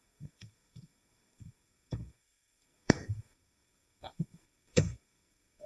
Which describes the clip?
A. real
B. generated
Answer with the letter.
B